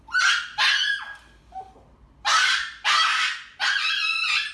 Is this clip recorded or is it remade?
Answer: recorded